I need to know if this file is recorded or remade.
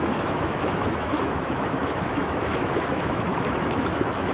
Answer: remade